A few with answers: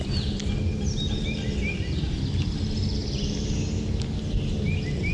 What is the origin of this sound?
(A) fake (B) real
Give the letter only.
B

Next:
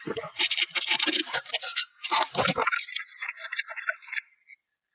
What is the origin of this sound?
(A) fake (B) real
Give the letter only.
B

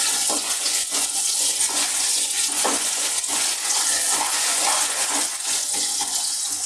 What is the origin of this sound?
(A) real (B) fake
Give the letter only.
B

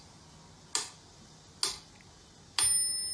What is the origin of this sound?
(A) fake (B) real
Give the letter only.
B